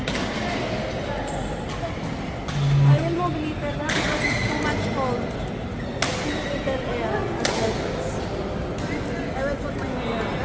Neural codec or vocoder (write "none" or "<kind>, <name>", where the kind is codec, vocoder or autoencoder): none